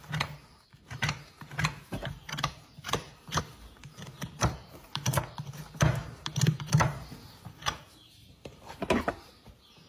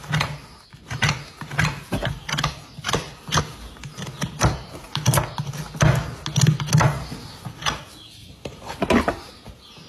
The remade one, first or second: first